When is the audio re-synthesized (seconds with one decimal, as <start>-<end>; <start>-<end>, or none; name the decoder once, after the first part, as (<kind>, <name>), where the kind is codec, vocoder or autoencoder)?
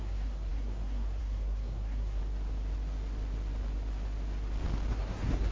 0.0-2.2 (codec, SNAC); 4.9-5.5